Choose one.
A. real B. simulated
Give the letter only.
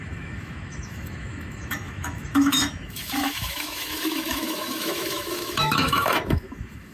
B